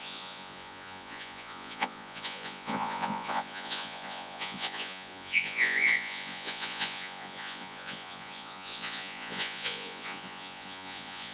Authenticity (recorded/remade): remade